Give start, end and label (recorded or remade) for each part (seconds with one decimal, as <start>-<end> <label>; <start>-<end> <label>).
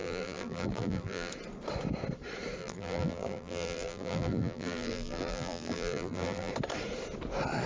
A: 0.0-1.3 remade; 1.3-2.6 recorded; 2.6-6.5 remade; 6.5-7.7 recorded